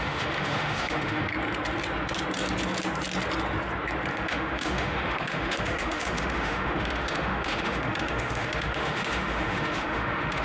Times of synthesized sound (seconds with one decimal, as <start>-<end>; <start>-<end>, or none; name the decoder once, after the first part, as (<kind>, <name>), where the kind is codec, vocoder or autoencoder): 0.0-1.3 (autoencoder, DAC-VAE); 4.1-10.4